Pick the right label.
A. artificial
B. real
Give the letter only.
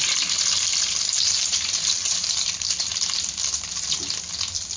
B